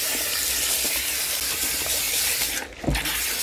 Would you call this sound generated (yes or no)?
no